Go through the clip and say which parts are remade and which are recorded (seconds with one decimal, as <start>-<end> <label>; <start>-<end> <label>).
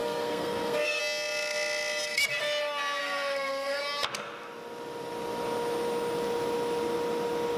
0.0-1.0 remade; 1.0-3.0 recorded; 3.0-3.8 remade; 3.8-7.6 recorded